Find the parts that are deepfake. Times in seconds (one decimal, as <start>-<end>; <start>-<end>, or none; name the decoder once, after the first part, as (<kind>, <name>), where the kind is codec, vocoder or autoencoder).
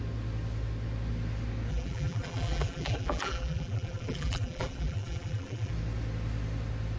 1.7-5.7 (vocoder, BigVGAN v2)